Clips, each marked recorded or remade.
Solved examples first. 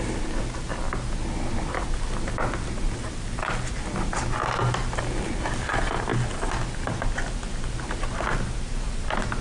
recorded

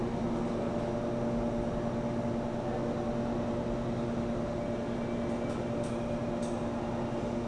recorded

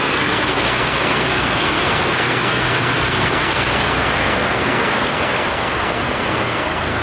remade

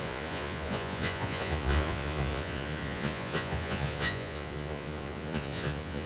remade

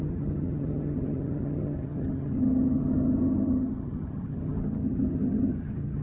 remade